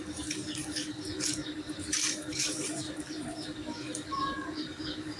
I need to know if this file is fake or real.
fake